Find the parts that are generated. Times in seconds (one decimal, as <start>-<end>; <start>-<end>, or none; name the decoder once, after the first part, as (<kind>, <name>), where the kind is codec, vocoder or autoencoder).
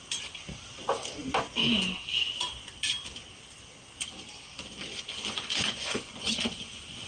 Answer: 4.9-7.1 (vocoder, Vocos)